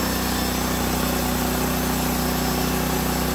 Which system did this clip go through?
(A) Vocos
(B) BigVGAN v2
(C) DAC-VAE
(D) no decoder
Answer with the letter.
D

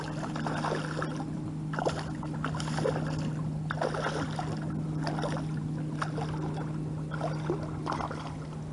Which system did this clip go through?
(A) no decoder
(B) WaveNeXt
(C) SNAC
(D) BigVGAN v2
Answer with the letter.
A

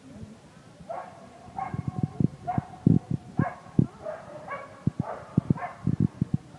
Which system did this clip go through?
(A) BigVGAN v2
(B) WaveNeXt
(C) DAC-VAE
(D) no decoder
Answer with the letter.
A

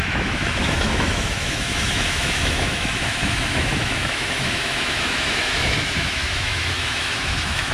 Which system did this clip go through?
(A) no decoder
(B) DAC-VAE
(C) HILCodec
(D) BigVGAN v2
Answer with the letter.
B